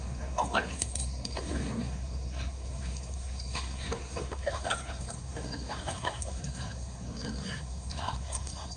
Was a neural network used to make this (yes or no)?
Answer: yes